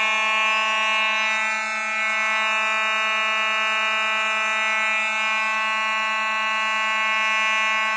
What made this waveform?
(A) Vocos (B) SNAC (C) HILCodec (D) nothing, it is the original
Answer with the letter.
D